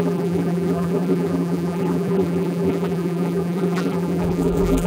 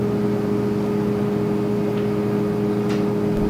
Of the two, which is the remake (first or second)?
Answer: first